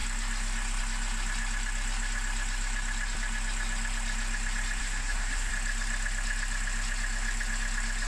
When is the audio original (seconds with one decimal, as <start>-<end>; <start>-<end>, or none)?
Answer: 0.0-4.8; 5.5-8.1